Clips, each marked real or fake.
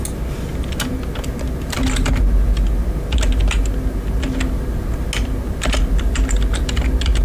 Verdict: real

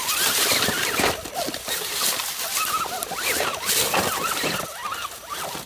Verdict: real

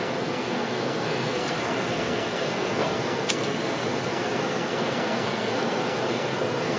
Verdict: fake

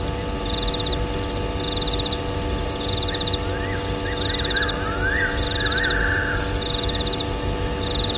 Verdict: real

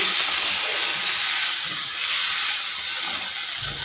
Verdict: real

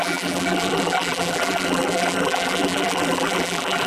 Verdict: fake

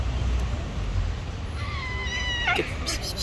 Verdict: real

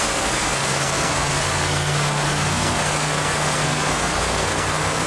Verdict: fake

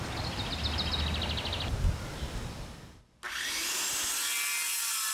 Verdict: real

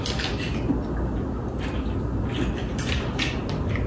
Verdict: real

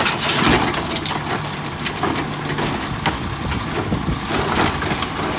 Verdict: real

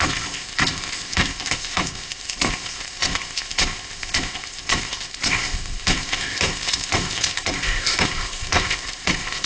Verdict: fake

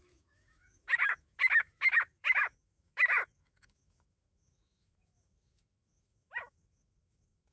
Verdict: fake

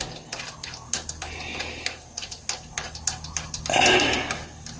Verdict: real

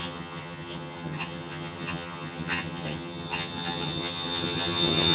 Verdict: fake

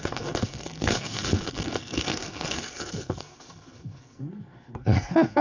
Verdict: fake